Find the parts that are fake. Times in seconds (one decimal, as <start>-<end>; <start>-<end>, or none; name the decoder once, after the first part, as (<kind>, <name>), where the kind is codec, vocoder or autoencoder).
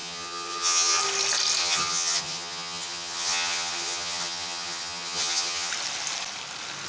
0.0-1.0 (vocoder, HiFi-GAN); 1.6-5.7